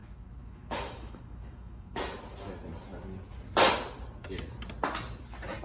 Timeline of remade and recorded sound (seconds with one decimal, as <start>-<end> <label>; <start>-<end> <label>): 0.0-2.0 remade; 2.0-5.6 recorded